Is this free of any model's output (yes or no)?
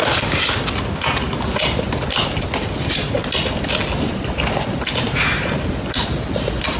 yes